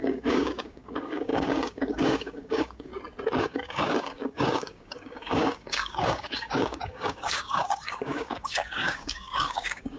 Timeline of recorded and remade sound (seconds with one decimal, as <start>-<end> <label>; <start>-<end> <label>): 0.0-2.9 remade; 2.9-3.4 recorded; 3.4-10.0 remade